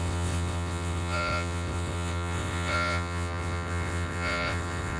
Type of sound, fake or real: fake